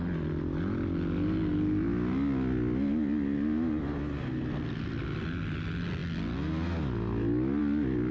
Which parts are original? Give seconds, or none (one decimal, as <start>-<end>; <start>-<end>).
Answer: 0.0-8.1